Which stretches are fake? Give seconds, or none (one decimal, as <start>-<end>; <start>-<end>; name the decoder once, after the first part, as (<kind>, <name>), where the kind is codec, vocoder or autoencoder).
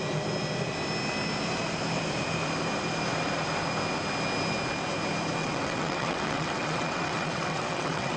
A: 5.4-8.2 (vocoder, WaveNeXt)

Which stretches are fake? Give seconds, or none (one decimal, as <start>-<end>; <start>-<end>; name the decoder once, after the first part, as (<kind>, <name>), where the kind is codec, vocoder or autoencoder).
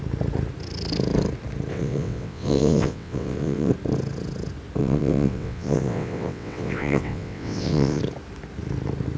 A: 1.7-3.7 (vocoder, WaveNeXt); 4.8-8.0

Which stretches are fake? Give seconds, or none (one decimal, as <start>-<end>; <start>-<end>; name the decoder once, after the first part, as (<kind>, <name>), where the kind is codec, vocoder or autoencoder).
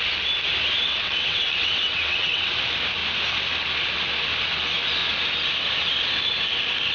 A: 0.9-2.5 (vocoder, WaveNeXt)